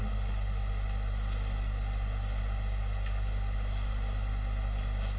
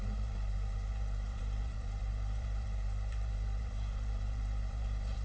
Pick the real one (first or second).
first